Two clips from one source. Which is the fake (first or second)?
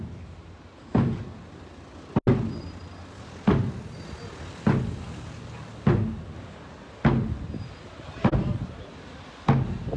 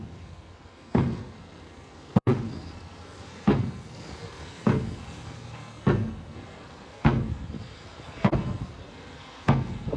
second